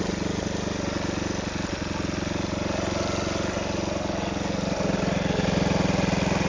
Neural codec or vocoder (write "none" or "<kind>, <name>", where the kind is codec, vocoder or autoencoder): none